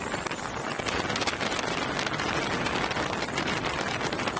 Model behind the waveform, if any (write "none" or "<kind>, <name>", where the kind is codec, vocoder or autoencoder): none